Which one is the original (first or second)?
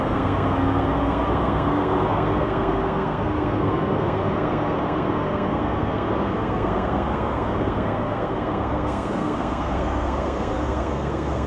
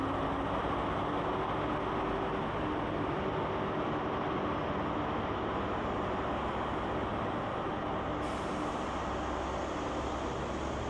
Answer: second